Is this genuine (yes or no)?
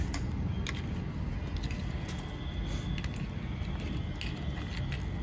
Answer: yes